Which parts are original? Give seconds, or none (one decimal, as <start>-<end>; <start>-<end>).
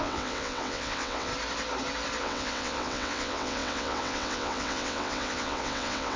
1.3-2.2